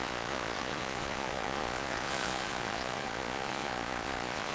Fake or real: fake